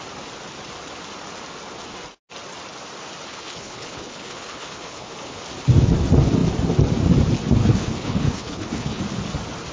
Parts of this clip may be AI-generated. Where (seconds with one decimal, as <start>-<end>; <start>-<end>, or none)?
3.3-5.4; 7.6-9.0